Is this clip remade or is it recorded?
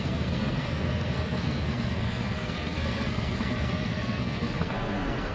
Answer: remade